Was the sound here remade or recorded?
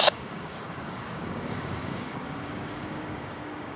remade